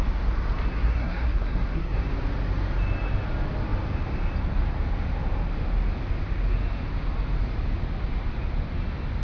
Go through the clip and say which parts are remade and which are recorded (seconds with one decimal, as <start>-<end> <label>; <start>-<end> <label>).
0.0-0.7 recorded; 0.7-2.0 remade; 2.0-9.2 recorded